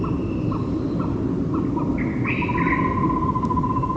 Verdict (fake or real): real